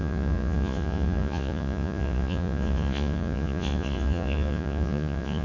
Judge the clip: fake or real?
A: fake